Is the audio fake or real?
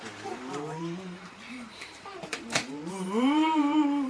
fake